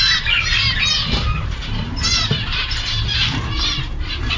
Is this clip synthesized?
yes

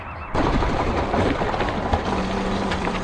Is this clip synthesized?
yes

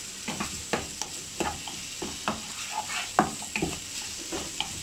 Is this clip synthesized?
no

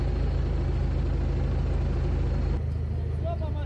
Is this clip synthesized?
no